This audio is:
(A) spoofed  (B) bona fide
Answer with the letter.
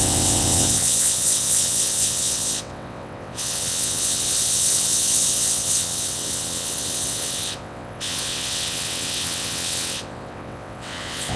A